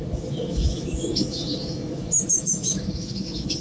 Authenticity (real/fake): fake